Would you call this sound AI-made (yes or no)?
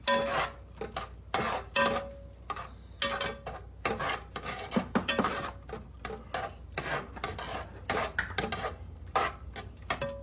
no